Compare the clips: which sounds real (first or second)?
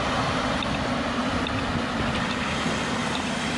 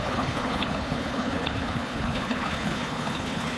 first